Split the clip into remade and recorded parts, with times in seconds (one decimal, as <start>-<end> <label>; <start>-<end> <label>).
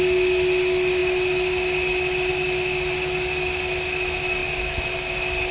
0.0-5.5 recorded